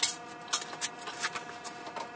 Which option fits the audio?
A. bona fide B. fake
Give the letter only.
A